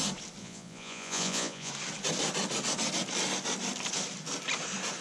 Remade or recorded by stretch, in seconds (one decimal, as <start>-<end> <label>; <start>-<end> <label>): 0.0-0.4 recorded; 0.4-1.7 remade; 1.7-5.0 recorded